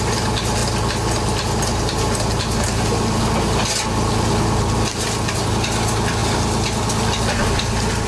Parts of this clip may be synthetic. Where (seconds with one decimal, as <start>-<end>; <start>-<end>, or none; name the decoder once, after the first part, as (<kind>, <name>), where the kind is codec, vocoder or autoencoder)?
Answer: none